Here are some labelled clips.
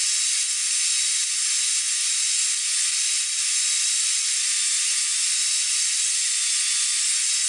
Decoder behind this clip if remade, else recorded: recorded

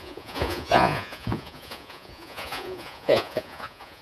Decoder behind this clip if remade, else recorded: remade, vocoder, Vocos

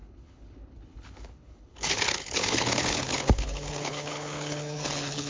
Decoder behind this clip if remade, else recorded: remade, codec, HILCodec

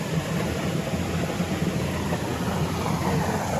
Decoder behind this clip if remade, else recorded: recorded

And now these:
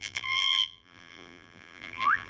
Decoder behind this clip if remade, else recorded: remade, vocoder, BigVGAN v2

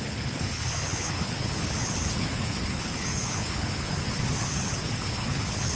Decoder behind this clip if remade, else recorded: remade, codec, HILCodec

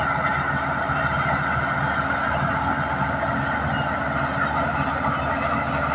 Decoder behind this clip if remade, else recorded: recorded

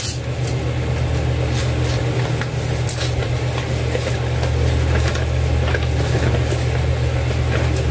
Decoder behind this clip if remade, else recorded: recorded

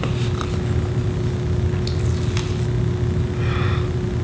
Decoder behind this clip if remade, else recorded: recorded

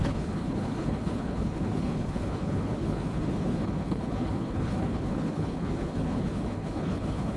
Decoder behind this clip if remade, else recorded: remade, codec, HILCodec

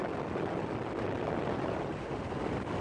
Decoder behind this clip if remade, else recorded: recorded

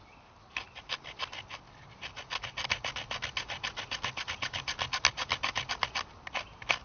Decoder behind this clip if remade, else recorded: recorded